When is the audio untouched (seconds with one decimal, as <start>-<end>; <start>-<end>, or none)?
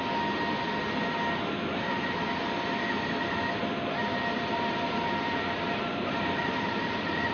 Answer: 0.0-4.0